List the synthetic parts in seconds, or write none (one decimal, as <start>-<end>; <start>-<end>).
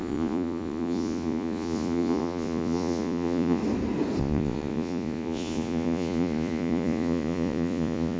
0.0-3.6; 4.2-8.2